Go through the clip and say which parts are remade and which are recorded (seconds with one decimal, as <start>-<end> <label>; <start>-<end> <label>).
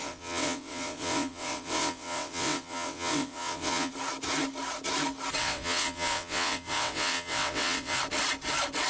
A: 0.0-3.9 remade; 3.9-5.4 recorded; 5.4-8.0 remade; 8.0-8.9 recorded